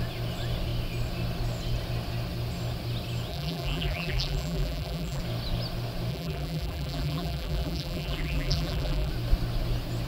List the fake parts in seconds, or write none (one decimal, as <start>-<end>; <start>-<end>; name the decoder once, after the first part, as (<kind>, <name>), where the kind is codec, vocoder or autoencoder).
3.3-5.2 (vocoder, BigVGAN v2); 6.1-9.1